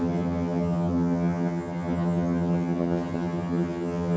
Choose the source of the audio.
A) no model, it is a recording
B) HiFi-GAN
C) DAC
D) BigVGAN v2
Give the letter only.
B